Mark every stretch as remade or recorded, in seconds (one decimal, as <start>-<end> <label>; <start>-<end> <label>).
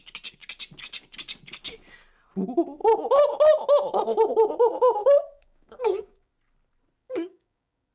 0.0-5.0 recorded; 5.0-6.3 remade; 6.3-7.0 recorded; 7.0-7.9 remade